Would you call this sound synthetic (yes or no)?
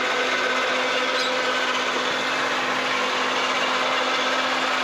no